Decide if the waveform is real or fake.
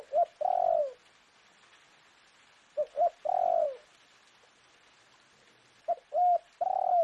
real